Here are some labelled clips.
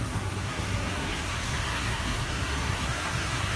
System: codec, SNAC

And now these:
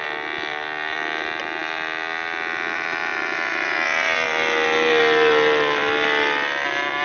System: none